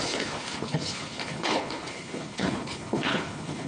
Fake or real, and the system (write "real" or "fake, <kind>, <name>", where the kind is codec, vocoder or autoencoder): fake, codec, HILCodec